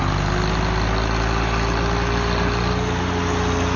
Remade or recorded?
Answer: recorded